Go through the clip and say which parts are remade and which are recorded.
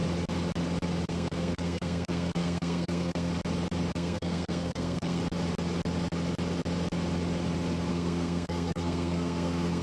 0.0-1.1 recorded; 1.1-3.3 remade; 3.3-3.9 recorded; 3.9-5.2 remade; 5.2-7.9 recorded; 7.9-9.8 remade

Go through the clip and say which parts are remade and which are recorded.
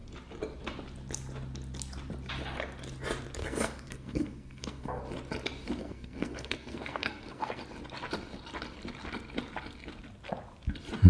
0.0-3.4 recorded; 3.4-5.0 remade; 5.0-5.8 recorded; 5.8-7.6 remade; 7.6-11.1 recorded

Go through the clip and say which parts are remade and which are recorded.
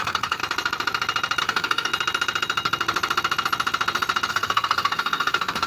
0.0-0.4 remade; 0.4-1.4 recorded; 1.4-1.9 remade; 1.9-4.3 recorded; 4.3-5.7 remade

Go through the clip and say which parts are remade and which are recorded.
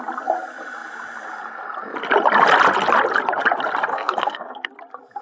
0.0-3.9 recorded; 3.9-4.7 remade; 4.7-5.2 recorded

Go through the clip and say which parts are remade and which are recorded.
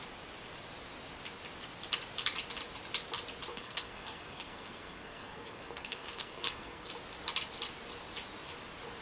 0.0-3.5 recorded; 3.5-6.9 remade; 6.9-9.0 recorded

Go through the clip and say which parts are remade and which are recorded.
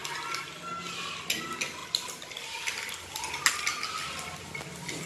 0.0-5.1 recorded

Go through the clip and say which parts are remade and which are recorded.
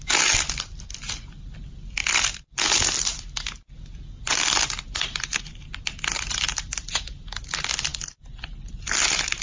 0.0-9.4 recorded